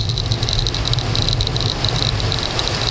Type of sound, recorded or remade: recorded